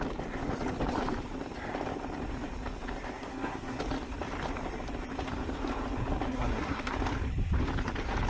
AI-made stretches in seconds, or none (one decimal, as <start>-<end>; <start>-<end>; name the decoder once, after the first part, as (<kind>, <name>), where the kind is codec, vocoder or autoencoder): 3.3-3.8 (codec, SNAC); 6.3-6.9